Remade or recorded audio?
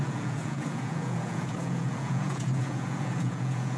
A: remade